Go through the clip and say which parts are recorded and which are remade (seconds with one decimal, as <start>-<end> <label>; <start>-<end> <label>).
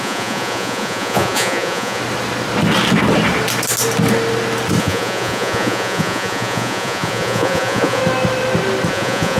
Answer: 0.0-2.0 remade; 2.0-4.8 recorded; 4.8-8.0 remade; 8.0-8.9 recorded; 8.9-9.4 remade